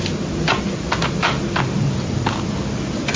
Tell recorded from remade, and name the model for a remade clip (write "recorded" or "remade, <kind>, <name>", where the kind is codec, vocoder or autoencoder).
recorded